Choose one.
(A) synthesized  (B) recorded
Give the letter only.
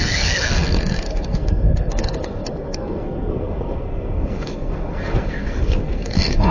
A